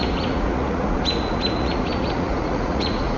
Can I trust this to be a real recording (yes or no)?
no